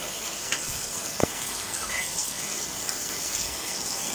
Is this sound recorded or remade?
remade